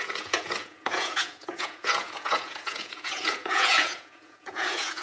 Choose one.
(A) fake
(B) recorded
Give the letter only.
A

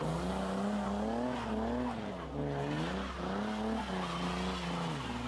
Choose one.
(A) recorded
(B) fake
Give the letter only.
A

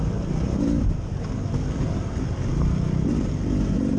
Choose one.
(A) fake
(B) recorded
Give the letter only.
B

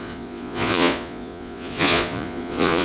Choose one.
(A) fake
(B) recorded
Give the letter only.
A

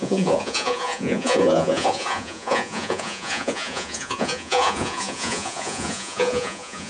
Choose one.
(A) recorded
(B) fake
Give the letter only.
B